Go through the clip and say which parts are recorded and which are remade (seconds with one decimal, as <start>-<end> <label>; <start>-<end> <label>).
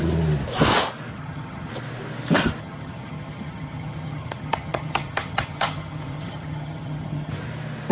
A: 0.0-1.1 recorded; 1.1-1.7 remade; 1.7-2.6 recorded; 2.6-7.3 remade; 7.3-7.9 recorded